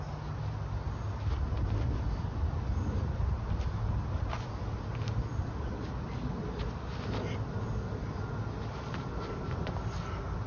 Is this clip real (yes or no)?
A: yes